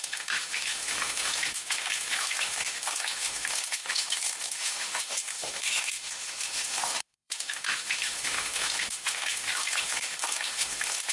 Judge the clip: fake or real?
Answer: fake